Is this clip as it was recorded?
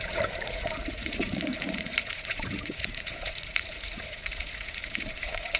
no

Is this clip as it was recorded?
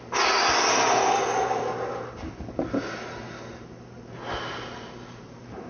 yes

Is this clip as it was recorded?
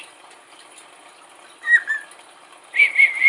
yes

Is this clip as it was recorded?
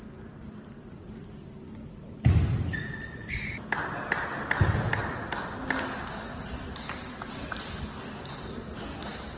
yes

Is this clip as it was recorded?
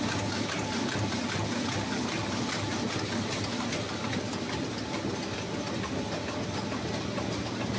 yes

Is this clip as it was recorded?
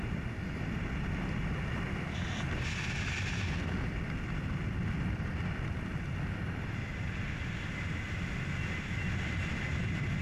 yes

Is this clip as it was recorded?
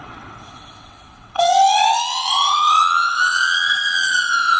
no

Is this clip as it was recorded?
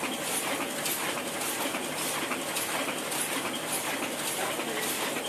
yes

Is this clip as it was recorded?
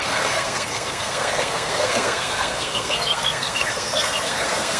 no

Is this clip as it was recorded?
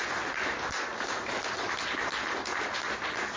yes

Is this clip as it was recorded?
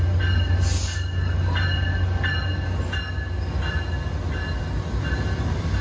yes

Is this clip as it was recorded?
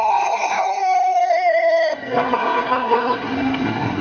no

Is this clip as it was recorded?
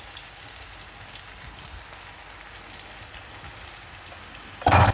yes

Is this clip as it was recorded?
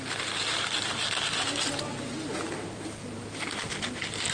yes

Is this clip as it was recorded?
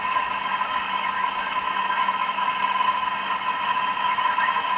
no